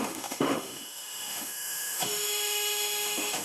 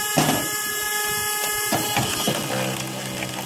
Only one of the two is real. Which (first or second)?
second